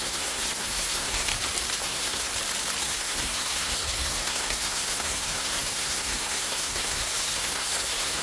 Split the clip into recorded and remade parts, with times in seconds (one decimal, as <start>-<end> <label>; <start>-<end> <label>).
0.0-1.3 remade; 1.3-1.8 recorded; 1.8-2.3 remade; 2.3-2.8 recorded; 2.8-8.2 remade